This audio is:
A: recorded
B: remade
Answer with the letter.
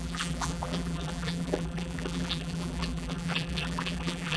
B